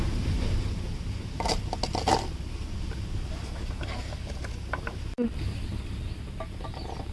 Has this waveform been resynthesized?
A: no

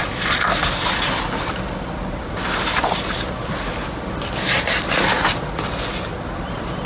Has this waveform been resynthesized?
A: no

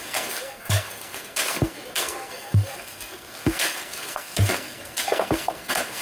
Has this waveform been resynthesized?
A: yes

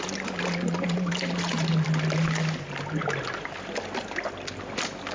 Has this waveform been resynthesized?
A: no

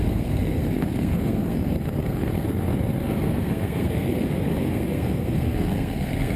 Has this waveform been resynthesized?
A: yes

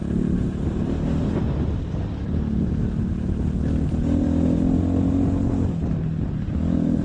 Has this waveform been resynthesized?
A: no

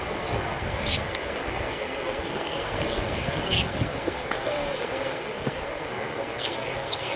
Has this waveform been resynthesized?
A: yes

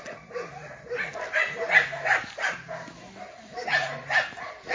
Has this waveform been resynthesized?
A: no